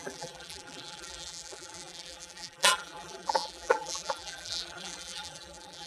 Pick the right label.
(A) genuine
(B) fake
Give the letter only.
B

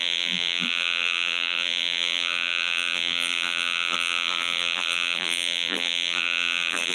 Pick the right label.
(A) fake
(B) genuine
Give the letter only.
A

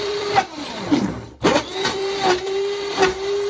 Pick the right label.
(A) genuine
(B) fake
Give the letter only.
B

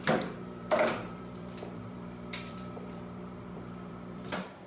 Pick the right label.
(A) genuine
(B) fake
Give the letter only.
B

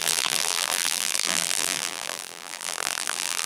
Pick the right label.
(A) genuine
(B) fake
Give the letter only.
B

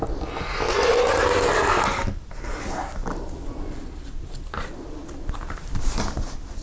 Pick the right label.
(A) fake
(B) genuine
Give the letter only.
B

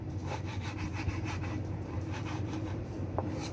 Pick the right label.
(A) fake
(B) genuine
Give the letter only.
A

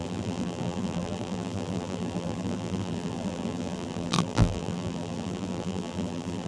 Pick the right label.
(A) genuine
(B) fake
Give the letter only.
B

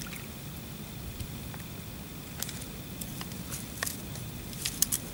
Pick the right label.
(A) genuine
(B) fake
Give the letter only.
A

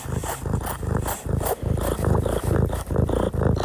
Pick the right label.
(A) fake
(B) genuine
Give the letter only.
B